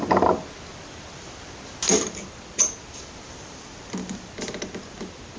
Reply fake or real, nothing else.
real